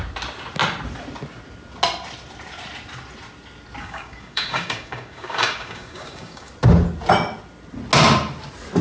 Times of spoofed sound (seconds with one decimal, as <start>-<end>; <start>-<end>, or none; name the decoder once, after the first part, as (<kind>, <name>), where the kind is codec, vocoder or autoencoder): 3.8-6.5 (codec, DAC)